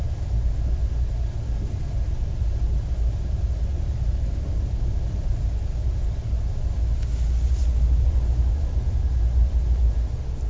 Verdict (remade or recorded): recorded